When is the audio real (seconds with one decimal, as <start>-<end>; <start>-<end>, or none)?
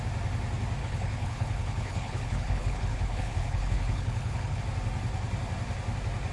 0.0-0.8; 4.6-6.3